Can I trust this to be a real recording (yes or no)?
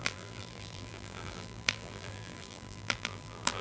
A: no